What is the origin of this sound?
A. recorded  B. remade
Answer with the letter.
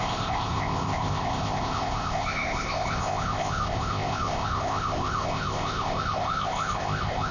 B